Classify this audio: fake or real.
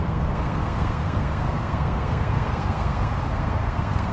fake